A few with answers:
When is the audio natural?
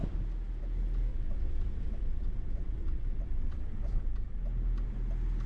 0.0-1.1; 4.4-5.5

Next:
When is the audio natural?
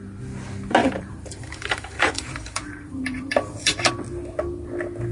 0.0-0.8; 3.9-5.1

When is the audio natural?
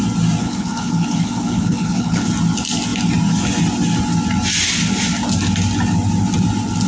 0.0-0.4; 2.3-6.9